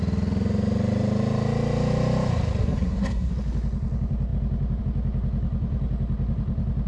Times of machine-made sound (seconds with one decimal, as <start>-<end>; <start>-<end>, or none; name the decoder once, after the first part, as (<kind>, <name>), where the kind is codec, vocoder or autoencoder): 2.6-3.3 (codec, SNAC)

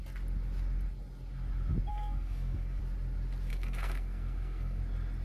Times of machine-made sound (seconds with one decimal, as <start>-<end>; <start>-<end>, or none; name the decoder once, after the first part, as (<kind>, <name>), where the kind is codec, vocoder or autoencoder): 1.9-2.8 (codec, SNAC); 3.5-4.8

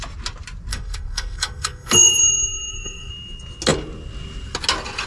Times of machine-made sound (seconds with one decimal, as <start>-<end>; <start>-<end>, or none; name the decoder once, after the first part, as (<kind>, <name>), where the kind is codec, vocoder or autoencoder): 0.7-3.1 (codec, SNAC)

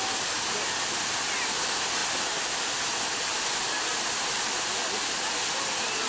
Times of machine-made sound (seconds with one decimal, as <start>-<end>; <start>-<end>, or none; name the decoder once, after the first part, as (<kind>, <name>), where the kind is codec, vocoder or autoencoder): none

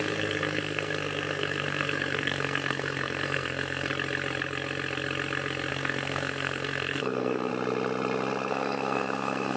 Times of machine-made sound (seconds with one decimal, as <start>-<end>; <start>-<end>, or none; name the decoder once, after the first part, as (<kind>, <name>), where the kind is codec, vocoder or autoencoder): 0.0-3.9 (codec, SNAC); 5.7-7.5; 8.5-9.6

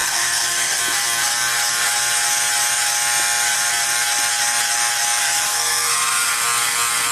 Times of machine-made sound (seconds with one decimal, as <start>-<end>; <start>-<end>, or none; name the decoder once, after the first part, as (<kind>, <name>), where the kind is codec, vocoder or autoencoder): 0.0-0.8 (codec, SNAC); 5.2-6.3

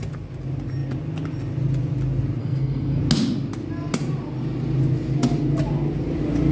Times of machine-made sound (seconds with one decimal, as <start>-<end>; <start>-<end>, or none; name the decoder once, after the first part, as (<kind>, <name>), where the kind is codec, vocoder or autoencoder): 2.4-3.0 (codec, SNAC)